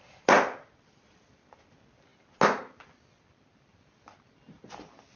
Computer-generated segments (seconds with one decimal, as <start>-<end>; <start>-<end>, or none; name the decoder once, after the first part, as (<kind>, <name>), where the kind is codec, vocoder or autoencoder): none